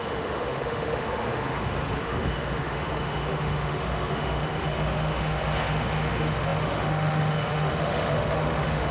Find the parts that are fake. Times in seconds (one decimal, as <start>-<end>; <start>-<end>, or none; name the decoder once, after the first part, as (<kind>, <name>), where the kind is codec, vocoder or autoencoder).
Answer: 0.0-8.9 (autoencoder, DAC-VAE)